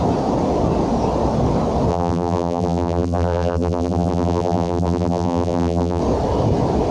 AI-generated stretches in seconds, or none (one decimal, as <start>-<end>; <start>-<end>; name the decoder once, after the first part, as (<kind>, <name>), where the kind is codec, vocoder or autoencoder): 1.9-6.0 (vocoder, BigVGAN v2)